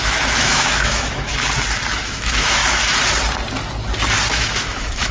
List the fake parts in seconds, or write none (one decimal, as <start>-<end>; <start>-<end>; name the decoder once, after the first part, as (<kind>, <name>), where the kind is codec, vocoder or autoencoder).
0.0-1.3 (autoencoder, DAC-VAE); 1.9-2.6; 4.3-5.1